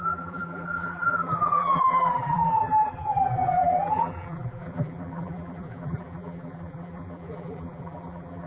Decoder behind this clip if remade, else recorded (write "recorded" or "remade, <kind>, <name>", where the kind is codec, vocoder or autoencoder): remade, vocoder, BigVGAN v2